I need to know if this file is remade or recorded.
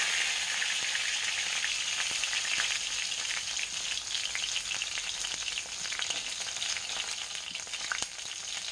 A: recorded